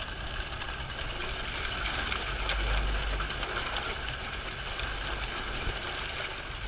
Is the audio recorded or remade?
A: recorded